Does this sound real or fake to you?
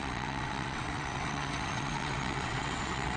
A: fake